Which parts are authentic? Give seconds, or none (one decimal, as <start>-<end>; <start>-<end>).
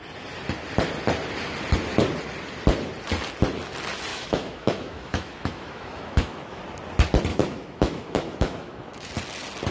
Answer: 0.0-4.1; 6.6-7.3; 9.1-9.7